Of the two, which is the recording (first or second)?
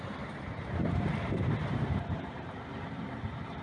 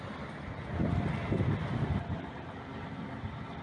second